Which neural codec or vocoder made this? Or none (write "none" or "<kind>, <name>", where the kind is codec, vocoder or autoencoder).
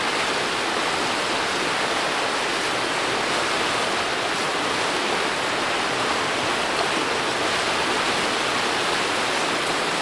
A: none